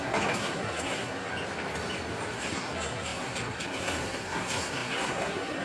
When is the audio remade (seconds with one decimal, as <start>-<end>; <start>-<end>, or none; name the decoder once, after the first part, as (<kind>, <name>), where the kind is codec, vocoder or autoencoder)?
0.0-1.3 (codec, SNAC); 2.3-5.6